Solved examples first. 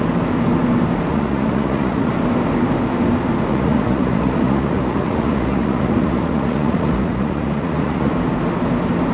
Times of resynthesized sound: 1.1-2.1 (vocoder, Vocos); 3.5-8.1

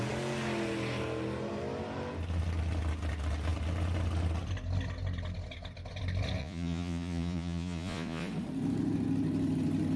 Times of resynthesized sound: 6.4-8.3 (vocoder, Vocos)